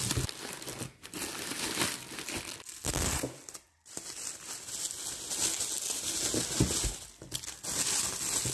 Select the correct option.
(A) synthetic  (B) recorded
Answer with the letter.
B